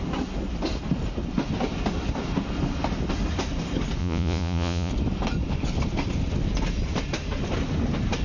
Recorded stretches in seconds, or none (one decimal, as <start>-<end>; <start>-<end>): 0.0-4.0; 4.9-8.2

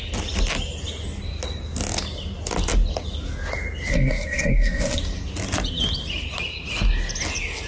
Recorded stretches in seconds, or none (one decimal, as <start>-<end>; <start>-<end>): 0.0-3.9; 5.0-7.7

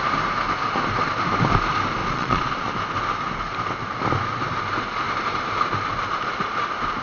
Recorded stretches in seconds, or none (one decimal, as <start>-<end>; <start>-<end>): 0.0-2.0; 2.7-7.0